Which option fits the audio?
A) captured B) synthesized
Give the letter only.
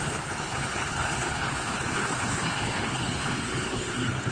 B